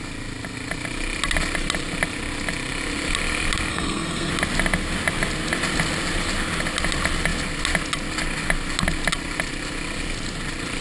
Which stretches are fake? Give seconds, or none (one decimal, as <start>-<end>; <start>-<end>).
3.7-4.3